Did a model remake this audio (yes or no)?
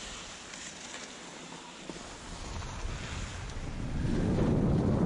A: no